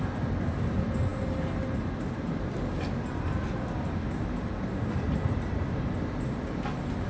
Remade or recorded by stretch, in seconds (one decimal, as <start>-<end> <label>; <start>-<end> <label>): 0.0-7.1 recorded